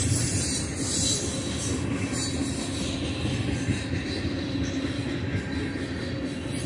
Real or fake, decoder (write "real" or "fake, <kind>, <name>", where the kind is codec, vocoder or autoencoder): real